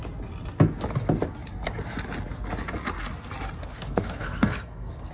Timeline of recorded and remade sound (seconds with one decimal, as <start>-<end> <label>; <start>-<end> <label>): 0.0-3.6 recorded; 3.6-5.1 remade